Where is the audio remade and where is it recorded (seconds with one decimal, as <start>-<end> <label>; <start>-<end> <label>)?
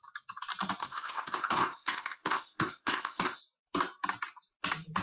0.0-0.8 recorded; 0.8-3.4 remade; 3.4-5.0 recorded